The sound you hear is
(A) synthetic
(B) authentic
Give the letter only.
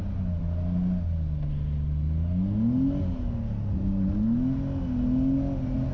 B